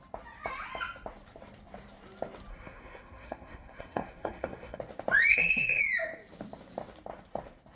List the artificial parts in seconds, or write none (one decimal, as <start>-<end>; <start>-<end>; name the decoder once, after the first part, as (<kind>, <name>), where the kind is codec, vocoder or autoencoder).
2.5-4.8 (codec, SNAC); 5.3-5.8